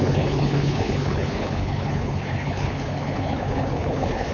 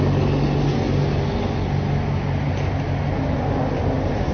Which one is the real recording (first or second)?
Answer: second